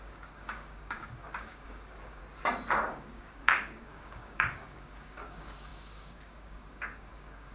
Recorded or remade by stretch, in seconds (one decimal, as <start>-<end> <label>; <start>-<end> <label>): 0.0-2.2 remade; 2.2-2.9 recorded; 2.9-7.5 remade